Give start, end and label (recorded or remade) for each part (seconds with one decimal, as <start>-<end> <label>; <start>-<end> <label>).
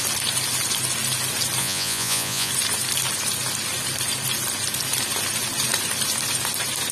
0.0-1.6 recorded; 1.6-2.5 remade; 2.5-6.9 recorded